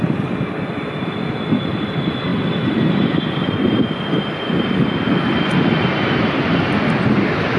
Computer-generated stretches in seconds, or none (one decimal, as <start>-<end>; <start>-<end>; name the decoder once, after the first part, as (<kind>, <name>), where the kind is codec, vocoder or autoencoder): none